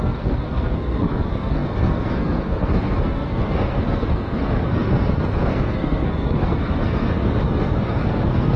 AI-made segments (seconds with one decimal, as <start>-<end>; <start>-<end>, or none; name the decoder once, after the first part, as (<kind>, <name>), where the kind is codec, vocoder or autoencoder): 0.0-8.6 (codec, SNAC)